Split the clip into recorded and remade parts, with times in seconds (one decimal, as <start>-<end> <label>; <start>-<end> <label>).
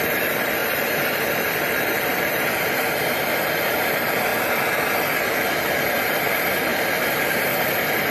0.0-4.3 remade; 4.3-5.8 recorded; 5.8-6.7 remade; 6.7-7.4 recorded; 7.4-8.1 remade